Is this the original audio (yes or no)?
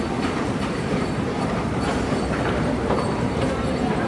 no